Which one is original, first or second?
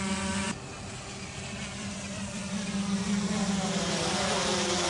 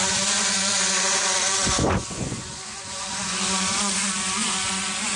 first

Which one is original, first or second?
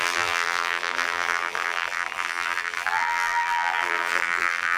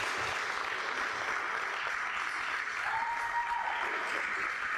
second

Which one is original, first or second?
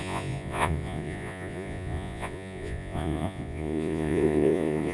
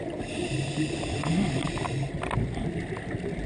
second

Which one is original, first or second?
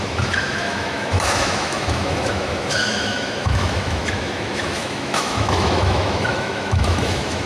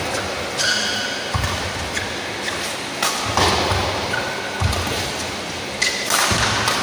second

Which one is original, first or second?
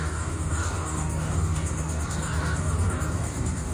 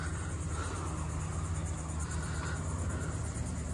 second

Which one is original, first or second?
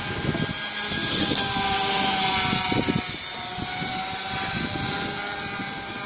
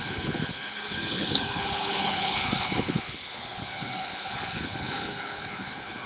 first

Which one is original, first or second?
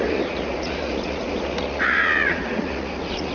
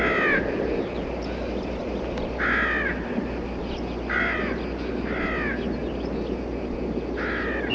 second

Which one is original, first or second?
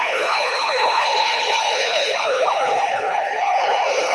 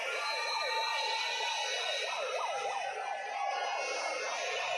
second